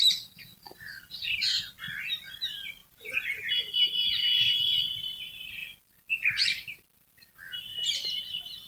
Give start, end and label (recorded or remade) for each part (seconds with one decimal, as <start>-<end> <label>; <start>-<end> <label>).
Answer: 0.0-5.6 recorded; 5.6-8.2 remade; 8.2-8.7 recorded